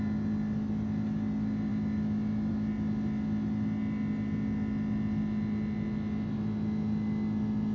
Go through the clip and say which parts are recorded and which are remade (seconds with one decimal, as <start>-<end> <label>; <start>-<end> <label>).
0.0-7.7 recorded

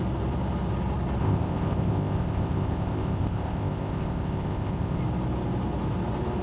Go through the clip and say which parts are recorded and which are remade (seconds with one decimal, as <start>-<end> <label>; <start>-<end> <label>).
0.0-1.2 recorded; 1.2-5.0 remade; 5.0-6.4 recorded

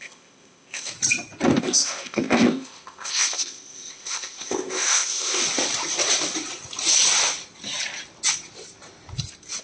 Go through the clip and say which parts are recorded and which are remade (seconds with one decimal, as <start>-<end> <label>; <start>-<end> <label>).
0.0-0.9 remade; 0.9-1.6 recorded; 1.6-5.4 remade; 5.4-9.6 recorded